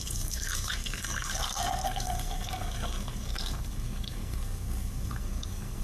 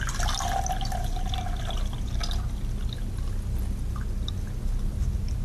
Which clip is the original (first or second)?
second